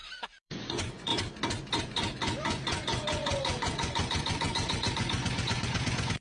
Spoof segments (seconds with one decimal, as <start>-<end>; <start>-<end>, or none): 0.0-1.1; 1.8-6.2